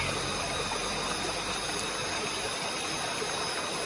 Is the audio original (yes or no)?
yes